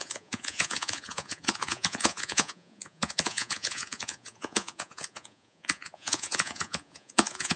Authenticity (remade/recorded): remade